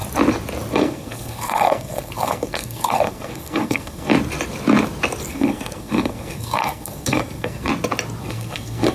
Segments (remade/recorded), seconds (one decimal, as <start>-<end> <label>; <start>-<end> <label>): 0.0-0.7 recorded; 0.7-4.1 remade; 4.1-5.3 recorded; 5.3-7.7 remade; 7.7-8.2 recorded; 8.2-8.9 remade